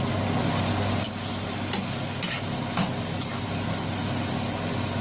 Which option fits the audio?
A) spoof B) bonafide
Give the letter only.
B